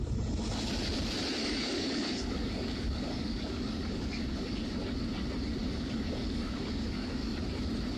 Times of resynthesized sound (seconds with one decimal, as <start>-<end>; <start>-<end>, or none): 1.4-4.6; 5.6-7.4